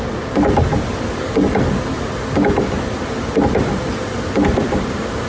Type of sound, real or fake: real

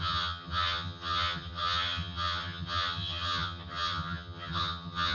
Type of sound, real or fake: fake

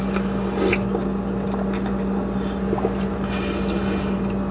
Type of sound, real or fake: real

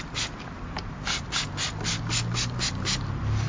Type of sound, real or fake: real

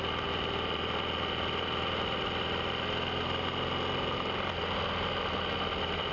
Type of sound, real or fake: real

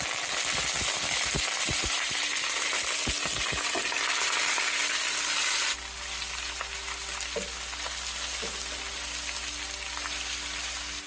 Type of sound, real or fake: real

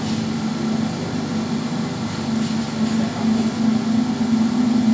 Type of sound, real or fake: real